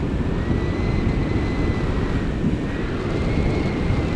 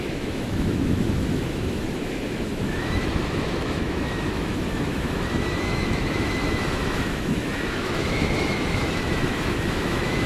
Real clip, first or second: first